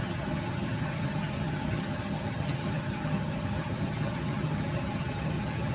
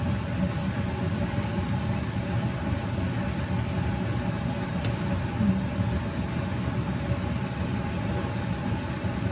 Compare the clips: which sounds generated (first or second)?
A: first